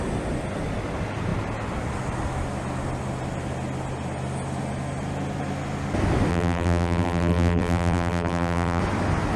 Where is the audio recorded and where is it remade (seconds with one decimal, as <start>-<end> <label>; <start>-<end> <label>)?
0.0-6.3 recorded; 6.3-8.8 remade; 8.8-9.4 recorded